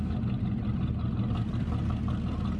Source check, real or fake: real